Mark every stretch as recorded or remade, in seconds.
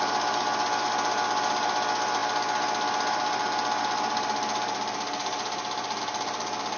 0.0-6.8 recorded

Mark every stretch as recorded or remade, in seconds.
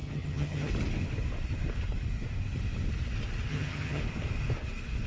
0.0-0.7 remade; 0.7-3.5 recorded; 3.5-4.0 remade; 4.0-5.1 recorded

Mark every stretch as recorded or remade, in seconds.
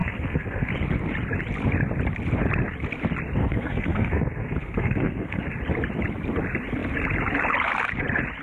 0.0-0.7 remade; 0.7-3.4 recorded; 3.4-5.4 remade; 5.4-8.4 recorded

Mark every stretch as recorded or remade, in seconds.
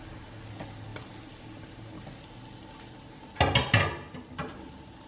0.0-5.1 recorded